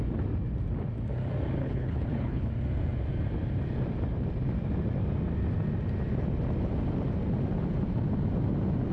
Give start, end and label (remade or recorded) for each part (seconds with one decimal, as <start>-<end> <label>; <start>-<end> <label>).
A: 0.0-1.6 recorded; 1.6-2.5 remade; 2.5-8.9 recorded